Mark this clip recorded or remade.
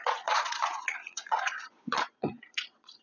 remade